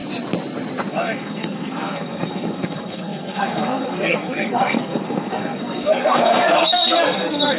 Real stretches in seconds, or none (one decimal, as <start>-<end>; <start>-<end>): 0.0-0.9